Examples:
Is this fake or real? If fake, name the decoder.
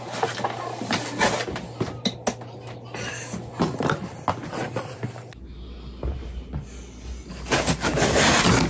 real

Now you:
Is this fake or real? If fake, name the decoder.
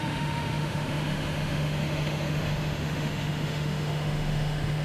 fake, autoencoder, DAC-VAE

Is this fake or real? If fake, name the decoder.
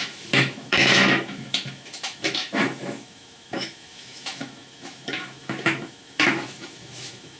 fake, autoencoder, DAC-VAE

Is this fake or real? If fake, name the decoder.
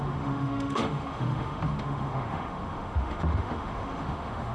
fake, autoencoder, DAC-VAE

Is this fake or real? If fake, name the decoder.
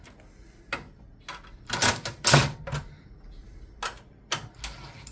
real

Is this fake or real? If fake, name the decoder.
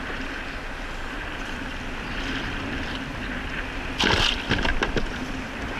real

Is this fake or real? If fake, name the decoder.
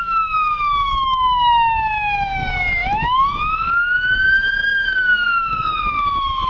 fake, autoencoder, DAC-VAE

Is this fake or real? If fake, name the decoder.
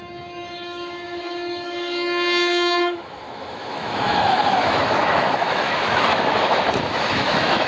fake, autoencoder, DAC-VAE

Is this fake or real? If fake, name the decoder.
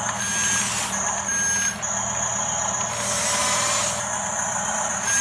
real